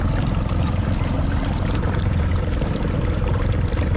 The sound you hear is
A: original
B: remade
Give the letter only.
B